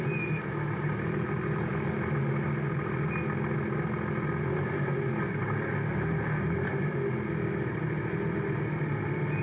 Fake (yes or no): no